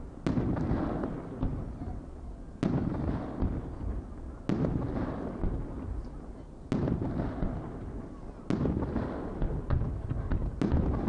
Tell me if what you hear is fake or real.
real